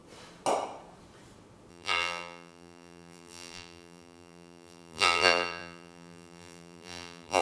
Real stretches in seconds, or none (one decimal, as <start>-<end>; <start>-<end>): 0.0-1.7